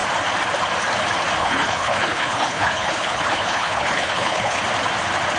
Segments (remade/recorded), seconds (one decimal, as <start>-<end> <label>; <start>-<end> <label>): 0.0-1.4 recorded; 1.4-4.6 remade; 4.6-5.4 recorded